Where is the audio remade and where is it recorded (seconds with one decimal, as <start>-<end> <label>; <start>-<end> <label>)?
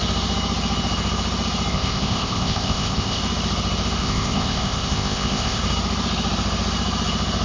0.0-1.7 recorded; 1.7-3.2 remade; 3.2-4.0 recorded; 4.0-5.6 remade; 5.6-7.4 recorded